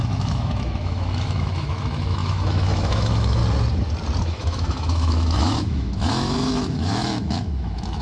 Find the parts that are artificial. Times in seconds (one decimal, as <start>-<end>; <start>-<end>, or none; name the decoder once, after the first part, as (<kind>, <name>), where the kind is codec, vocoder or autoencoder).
0.0-3.4 (autoencoder, DAC-VAE); 4.2-8.0